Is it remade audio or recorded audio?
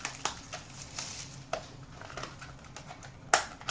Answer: recorded